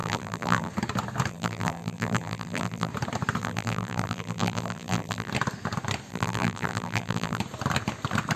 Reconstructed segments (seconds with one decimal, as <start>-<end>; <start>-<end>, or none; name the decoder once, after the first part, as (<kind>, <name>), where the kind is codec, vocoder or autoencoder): 0.0-0.7 (vocoder, BigVGAN v2); 1.3-2.9; 3.4-5.3; 6.1-7.4

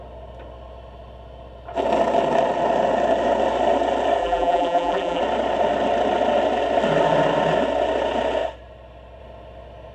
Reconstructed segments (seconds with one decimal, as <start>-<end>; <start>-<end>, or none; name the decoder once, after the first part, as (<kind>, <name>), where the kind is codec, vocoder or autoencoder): 4.2-5.2 (vocoder, BigVGAN v2)

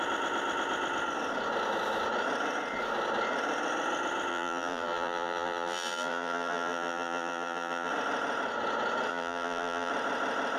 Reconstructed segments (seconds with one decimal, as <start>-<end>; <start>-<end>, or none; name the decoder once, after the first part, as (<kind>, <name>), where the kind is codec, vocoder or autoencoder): 4.3-7.9 (vocoder, BigVGAN v2); 9.1-9.9

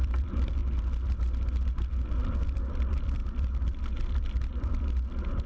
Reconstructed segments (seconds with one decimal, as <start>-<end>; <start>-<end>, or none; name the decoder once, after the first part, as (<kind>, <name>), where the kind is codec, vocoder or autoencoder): 0.0-0.6 (vocoder, BigVGAN v2); 2.5-3.2; 4.0-5.5